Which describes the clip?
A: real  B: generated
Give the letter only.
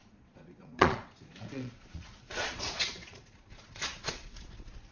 B